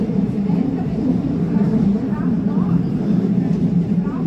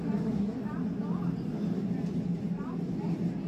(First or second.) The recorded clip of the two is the second